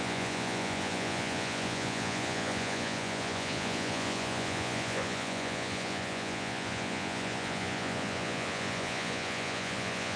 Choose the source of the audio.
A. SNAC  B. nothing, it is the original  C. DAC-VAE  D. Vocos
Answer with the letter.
D